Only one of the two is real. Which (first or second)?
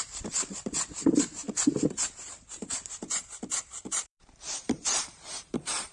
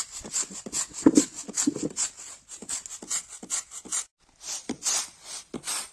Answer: second